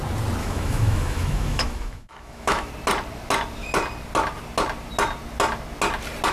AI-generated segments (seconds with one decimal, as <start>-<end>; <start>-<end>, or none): 0.4-2.7